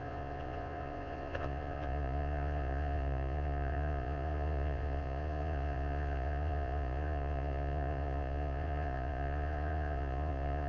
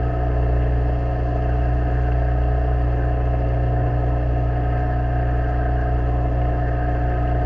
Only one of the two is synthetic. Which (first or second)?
first